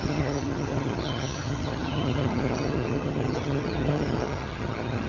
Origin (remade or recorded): remade